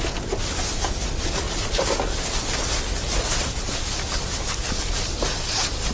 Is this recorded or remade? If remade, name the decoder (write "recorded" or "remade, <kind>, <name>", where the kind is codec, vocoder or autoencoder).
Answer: recorded